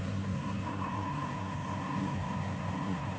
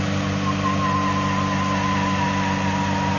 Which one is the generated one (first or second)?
first